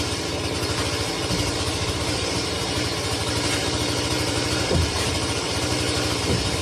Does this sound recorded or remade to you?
remade